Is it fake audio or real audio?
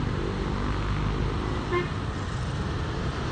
real